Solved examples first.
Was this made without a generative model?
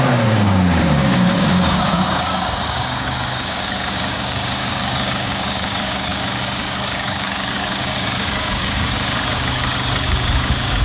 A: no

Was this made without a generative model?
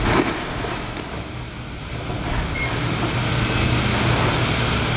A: yes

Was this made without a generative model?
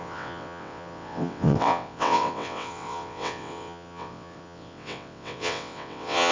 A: no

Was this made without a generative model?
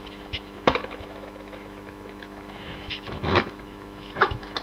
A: no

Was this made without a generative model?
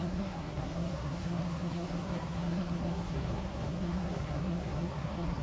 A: no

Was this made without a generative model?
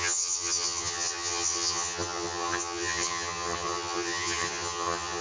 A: no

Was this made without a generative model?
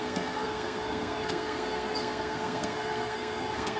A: no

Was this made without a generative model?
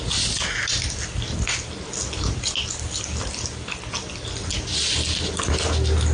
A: yes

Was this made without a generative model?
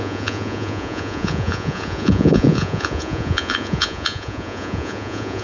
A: no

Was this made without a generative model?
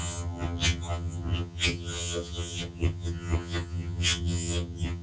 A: no